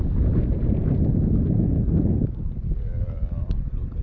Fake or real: real